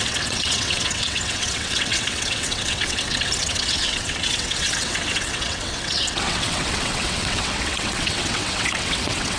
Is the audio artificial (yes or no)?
yes